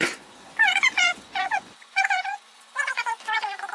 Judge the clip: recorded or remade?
remade